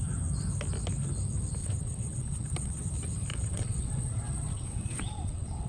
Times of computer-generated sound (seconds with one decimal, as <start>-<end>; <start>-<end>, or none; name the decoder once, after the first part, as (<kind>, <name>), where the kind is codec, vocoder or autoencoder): 1.6-2.8 (vocoder, WaveNeXt); 3.3-5.7